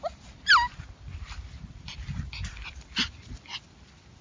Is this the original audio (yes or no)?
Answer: yes